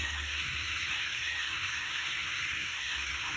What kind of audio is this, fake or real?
fake